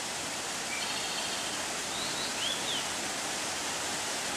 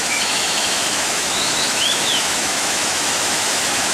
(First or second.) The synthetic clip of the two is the second